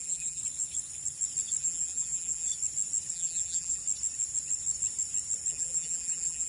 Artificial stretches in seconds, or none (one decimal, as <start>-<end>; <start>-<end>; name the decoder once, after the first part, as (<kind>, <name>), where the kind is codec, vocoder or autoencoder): 0.0-0.4 (vocoder, BigVGAN v2); 1.6-2.5; 3.1-3.8; 5.5-6.5